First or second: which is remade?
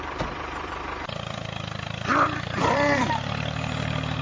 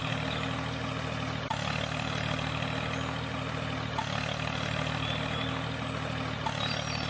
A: first